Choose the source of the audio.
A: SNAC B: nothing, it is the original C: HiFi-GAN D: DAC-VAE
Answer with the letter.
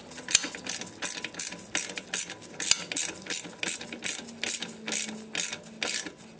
B